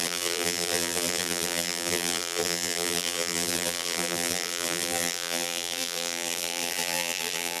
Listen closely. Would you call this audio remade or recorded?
remade